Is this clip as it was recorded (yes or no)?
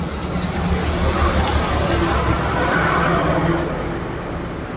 yes